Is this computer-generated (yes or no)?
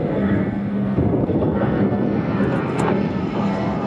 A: yes